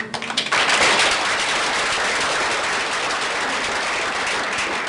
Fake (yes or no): no